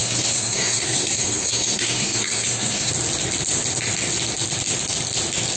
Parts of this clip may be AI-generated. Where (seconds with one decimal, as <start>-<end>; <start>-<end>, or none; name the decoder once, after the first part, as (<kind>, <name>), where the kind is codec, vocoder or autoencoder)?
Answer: 0.0-2.9 (codec, SNAC)